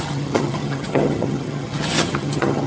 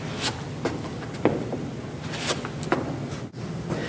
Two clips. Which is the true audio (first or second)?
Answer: second